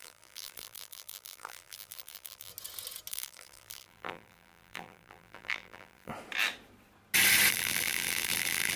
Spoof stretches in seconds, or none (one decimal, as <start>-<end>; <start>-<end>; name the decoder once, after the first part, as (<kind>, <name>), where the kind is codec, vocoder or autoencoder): 0.0-2.5 (vocoder, BigVGAN v2); 3.1-6.1; 7.5-8.8

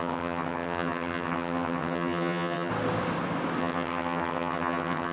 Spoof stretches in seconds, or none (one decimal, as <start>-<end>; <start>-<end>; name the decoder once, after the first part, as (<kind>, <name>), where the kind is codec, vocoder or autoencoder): 0.0-2.7 (vocoder, HiFi-GAN); 3.6-5.1